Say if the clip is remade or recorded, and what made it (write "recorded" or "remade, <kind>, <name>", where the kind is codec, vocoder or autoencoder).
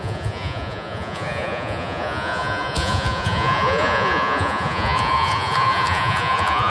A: remade, vocoder, Vocos